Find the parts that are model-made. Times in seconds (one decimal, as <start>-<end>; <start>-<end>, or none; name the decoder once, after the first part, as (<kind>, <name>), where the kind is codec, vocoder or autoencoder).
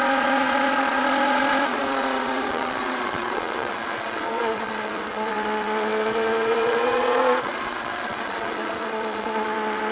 0.0-9.9 (vocoder, Vocos)